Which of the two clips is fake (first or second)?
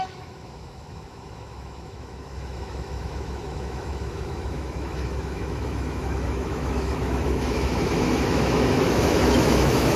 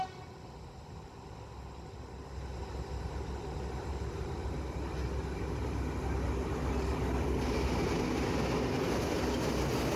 first